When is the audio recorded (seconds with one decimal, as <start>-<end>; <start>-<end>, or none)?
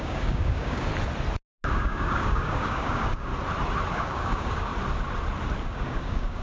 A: 0.9-1.7; 3.3-3.9; 4.7-5.7